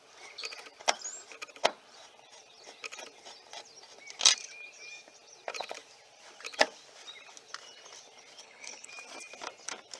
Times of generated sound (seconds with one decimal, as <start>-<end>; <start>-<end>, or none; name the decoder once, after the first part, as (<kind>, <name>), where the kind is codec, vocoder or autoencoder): 8.4-8.9 (codec, HILCodec)